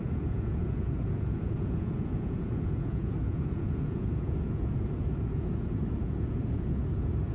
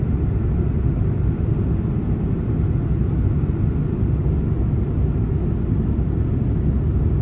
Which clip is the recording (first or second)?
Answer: second